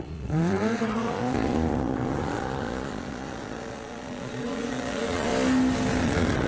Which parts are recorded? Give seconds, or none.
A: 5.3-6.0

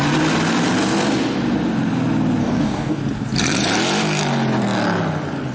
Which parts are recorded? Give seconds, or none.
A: 0.0-2.4; 3.0-5.5